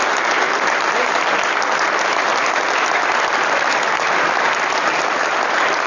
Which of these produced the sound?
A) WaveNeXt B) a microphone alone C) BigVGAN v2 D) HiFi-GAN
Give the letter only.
B